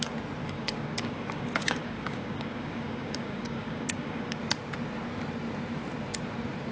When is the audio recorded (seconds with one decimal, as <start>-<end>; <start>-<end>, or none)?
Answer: 0.0-0.4; 4.4-6.7